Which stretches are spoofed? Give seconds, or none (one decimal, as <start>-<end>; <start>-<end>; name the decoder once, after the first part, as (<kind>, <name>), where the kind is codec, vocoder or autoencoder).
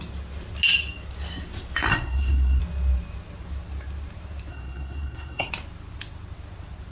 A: 1.9-2.6 (codec, SNAC); 4.5-5.5